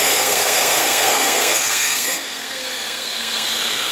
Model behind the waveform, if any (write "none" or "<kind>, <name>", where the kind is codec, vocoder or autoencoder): codec, SNAC